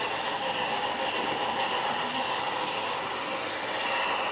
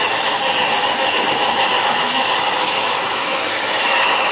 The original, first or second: first